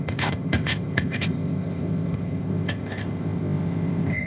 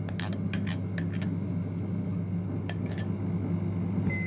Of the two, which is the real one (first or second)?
second